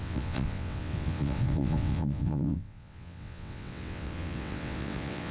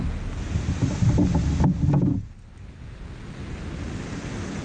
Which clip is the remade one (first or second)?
first